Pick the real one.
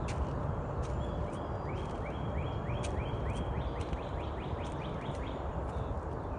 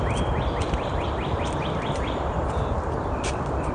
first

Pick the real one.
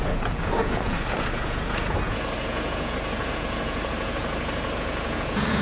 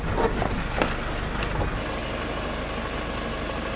second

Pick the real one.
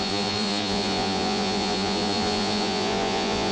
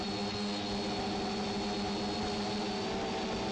second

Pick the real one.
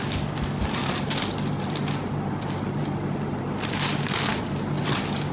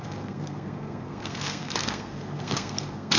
first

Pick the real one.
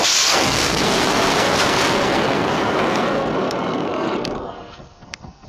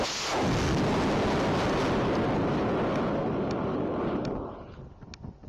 second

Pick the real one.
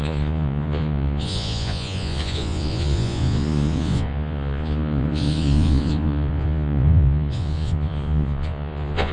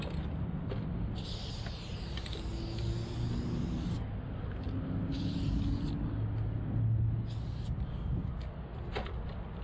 second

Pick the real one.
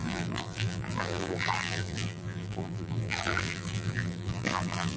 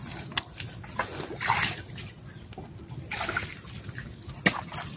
second